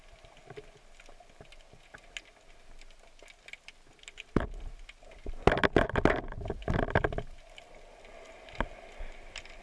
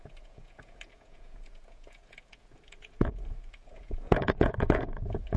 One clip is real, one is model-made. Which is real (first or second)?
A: first